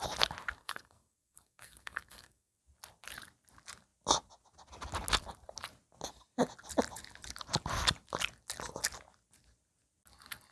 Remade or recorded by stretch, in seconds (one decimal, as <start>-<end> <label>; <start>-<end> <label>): 0.0-0.6 recorded; 0.6-2.6 remade; 2.6-10.5 recorded